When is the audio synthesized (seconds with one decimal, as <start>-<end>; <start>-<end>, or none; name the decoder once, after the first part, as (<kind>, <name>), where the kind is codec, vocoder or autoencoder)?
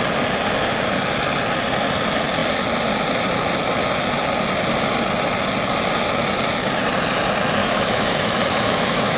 7.6-9.2 (autoencoder, DAC-VAE)